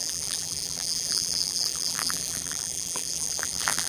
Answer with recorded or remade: remade